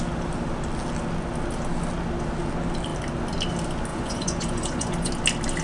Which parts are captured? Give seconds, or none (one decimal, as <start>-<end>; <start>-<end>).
0.0-3.9; 5.1-5.6